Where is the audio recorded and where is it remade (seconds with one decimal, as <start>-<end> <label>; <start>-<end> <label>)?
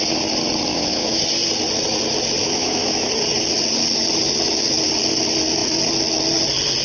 0.0-0.7 recorded; 0.7-1.2 remade; 1.2-2.4 recorded; 2.4-3.1 remade; 3.1-6.8 recorded